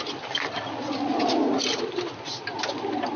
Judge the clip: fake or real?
real